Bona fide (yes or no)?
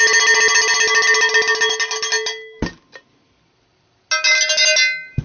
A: yes